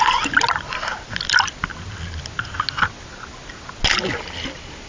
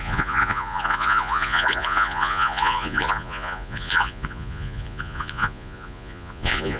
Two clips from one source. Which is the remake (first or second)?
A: second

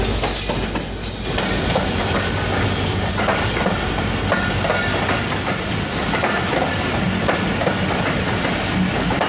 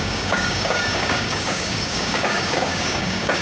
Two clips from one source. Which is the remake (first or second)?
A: second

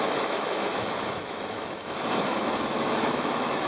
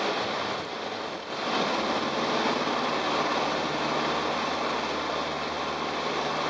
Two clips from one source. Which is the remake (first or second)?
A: first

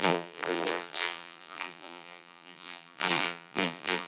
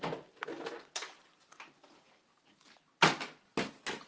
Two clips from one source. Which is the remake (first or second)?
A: first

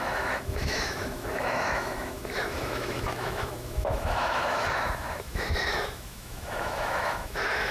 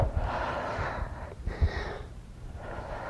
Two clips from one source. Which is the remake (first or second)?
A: first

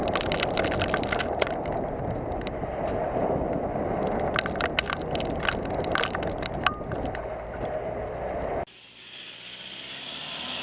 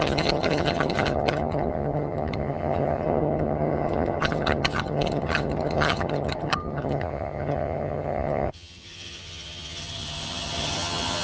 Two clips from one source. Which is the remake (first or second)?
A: second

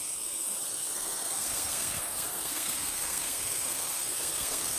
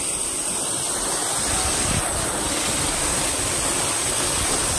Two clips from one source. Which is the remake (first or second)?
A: first